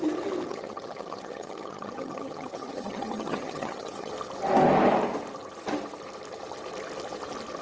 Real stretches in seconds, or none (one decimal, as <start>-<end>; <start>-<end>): 0.0-0.5; 4.1-7.6